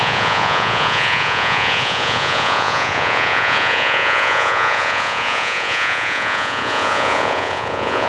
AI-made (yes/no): yes